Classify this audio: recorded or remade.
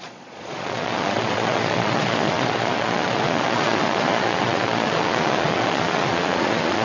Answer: remade